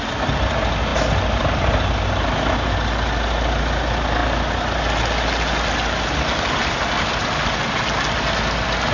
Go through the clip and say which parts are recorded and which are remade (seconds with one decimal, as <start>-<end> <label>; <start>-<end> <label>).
0.0-8.9 recorded